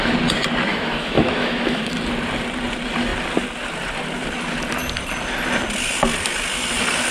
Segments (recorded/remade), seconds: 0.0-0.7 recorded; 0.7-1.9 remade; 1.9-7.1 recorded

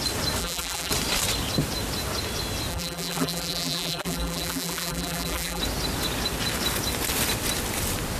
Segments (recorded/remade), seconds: 0.0-0.4 recorded; 0.4-0.9 remade; 0.9-2.7 recorded; 2.7-5.6 remade; 5.6-8.2 recorded

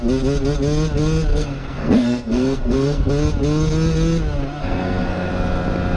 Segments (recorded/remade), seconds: 0.0-1.3 recorded; 1.3-3.1 remade; 3.1-4.6 recorded; 4.6-5.3 remade; 5.3-6.0 recorded

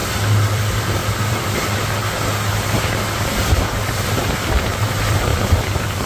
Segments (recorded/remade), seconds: 0.0-0.5 recorded; 0.5-2.0 remade; 2.0-3.9 recorded; 3.9-6.1 remade